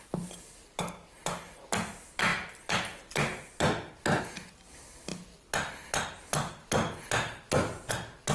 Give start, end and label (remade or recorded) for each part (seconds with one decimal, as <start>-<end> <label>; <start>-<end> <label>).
0.0-8.3 recorded

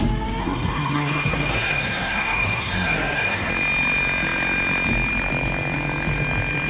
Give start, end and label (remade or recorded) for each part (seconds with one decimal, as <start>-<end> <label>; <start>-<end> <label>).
0.0-0.4 recorded; 0.4-3.5 remade; 3.5-6.7 recorded

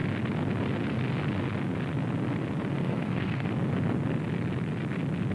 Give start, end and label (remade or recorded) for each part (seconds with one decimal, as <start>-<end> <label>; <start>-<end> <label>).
0.0-2.8 recorded; 2.8-3.5 remade; 3.5-5.3 recorded

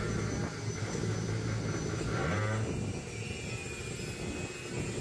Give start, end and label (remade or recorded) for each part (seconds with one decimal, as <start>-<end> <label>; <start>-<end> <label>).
0.0-5.0 recorded

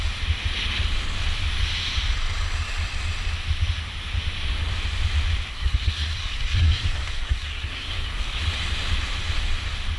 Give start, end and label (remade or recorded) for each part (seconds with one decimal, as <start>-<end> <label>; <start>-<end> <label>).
0.0-5.5 recorded; 5.5-8.4 remade; 8.4-10.0 recorded

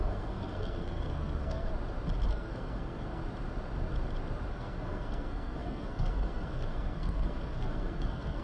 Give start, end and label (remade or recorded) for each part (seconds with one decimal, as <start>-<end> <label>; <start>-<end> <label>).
0.0-1.7 remade; 1.7-2.3 recorded; 2.3-3.2 remade; 3.2-4.5 recorded; 4.5-8.4 remade

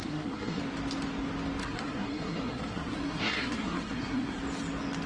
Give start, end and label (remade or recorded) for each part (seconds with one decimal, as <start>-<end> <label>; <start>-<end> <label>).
0.0-0.6 remade; 0.6-1.6 recorded; 1.6-4.4 remade; 4.4-5.1 recorded

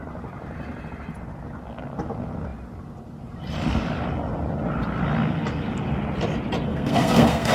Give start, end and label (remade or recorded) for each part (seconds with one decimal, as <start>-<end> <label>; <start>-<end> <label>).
0.0-6.7 recorded; 6.7-7.5 remade